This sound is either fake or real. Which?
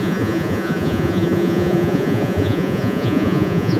fake